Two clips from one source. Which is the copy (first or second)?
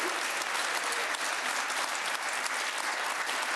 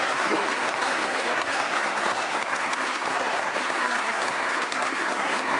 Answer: second